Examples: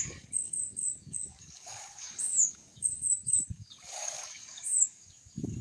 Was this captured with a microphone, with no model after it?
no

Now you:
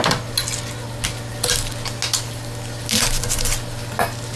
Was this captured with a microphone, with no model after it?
yes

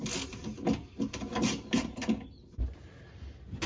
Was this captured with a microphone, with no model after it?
yes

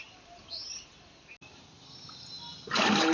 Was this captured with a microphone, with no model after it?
yes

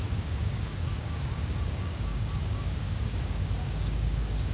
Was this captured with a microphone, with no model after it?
no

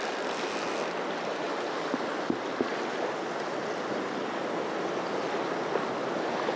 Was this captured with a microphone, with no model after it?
yes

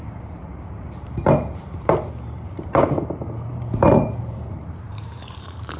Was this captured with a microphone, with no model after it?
no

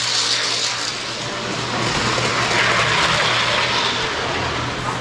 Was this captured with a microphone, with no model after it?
yes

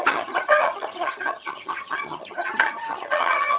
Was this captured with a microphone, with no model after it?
no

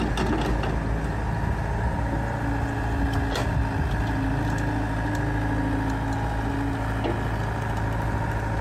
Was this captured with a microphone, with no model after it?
yes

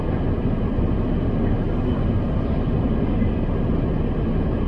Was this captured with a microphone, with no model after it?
yes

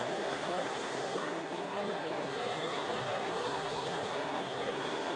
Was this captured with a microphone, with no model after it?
no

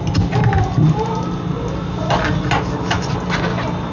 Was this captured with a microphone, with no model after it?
yes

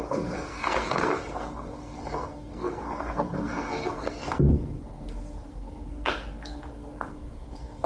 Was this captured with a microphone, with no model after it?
no